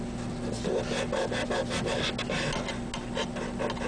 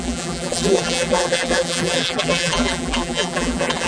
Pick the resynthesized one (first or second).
second